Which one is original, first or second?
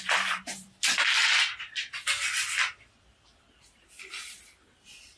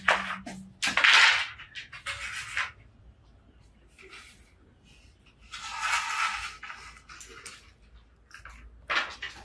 second